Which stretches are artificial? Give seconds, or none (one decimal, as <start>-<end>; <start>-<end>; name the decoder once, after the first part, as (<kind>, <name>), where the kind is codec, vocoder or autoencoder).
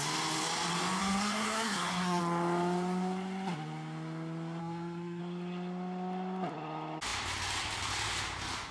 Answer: 1.0-2.2 (codec, SNAC); 4.6-5.2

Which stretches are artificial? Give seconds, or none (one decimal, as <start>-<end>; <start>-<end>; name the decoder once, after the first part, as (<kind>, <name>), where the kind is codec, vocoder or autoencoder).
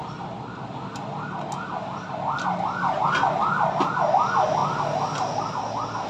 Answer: none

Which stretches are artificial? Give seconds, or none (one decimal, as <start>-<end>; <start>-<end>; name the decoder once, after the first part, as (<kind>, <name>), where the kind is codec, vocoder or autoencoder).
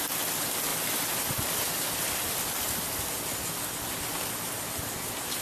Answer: none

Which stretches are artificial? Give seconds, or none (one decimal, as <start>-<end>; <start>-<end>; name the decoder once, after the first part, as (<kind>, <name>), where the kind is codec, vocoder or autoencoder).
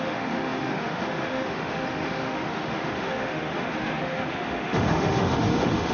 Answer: 0.0-5.9 (autoencoder, DAC-VAE)